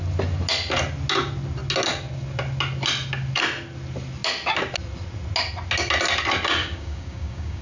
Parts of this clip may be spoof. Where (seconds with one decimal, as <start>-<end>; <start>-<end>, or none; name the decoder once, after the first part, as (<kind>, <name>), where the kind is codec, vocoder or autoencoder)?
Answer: 6.6-7.6 (codec, DAC)